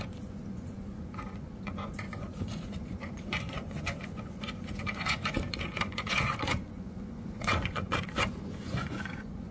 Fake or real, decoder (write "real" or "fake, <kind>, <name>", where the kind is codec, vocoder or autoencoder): fake, vocoder, Vocos